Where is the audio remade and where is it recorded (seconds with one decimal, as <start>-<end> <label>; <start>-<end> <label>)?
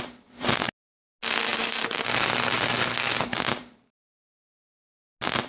0.0-5.5 recorded